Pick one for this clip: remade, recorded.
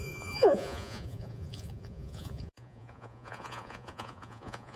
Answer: remade